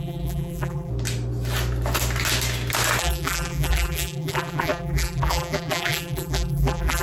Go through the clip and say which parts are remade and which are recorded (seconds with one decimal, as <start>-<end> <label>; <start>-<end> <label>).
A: 0.0-0.9 remade; 0.9-3.0 recorded; 3.0-7.0 remade

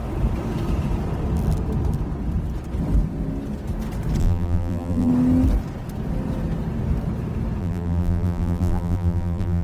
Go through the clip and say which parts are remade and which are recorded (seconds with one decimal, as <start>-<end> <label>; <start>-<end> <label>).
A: 0.0-4.2 recorded; 4.2-5.1 remade; 5.1-7.6 recorded; 7.6-9.6 remade

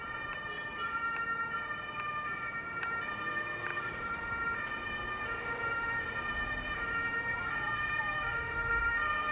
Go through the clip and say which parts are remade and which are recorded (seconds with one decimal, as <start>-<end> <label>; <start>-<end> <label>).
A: 0.0-3.7 recorded; 3.7-4.6 remade; 4.6-7.0 recorded; 7.0-8.0 remade; 8.0-9.3 recorded

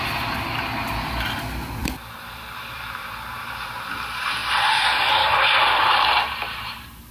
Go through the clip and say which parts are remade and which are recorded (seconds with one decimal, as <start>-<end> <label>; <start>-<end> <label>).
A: 0.0-1.8 recorded; 1.8-3.7 remade; 3.7-4.4 recorded; 4.4-4.9 remade; 4.9-7.1 recorded

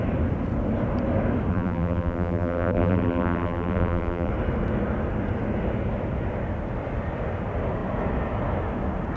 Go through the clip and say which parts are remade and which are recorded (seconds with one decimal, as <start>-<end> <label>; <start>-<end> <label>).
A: 0.0-1.5 recorded; 1.5-4.3 remade; 4.3-9.2 recorded

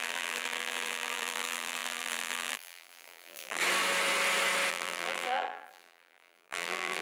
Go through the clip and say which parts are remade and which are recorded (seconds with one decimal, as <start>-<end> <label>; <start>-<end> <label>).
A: 0.0-3.6 remade; 3.6-4.7 recorded; 4.7-7.0 remade

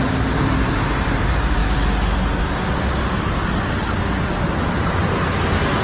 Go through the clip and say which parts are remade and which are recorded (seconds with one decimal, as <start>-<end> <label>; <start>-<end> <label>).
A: 0.0-1.6 remade; 1.6-5.1 recorded; 5.1-5.8 remade